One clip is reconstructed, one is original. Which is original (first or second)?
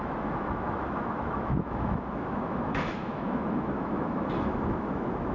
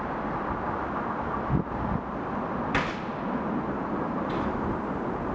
second